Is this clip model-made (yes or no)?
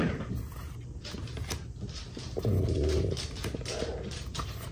no